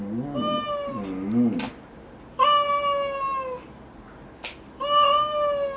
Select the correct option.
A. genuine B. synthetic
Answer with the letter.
A